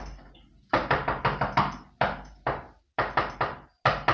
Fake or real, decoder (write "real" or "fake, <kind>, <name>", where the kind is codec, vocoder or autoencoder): real